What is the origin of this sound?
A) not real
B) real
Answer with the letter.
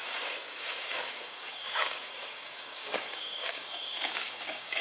A